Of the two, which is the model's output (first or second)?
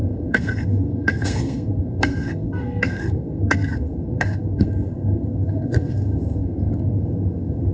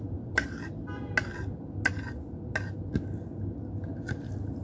first